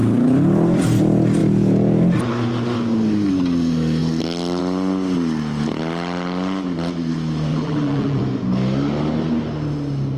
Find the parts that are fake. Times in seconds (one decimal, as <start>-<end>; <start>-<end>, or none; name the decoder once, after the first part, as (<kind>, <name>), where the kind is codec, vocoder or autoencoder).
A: 7.5-8.2 (vocoder, BigVGAN v2)